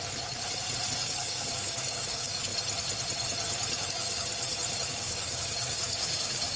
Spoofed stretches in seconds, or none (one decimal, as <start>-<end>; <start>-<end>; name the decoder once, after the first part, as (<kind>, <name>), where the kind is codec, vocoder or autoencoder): 1.0-2.5 (codec, DAC); 3.9-4.3; 4.9-6.6